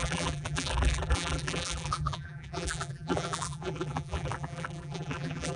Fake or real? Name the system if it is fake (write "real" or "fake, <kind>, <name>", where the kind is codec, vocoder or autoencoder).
fake, vocoder, BigVGAN v2